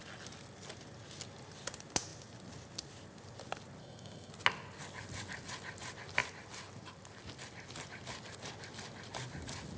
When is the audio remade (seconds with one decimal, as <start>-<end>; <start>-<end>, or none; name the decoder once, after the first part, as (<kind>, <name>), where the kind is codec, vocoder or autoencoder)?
3.8-4.3 (codec, SNAC)